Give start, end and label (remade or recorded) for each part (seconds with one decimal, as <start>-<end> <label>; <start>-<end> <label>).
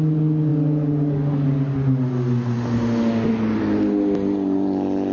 0.0-5.1 recorded